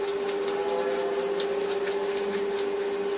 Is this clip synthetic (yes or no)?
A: no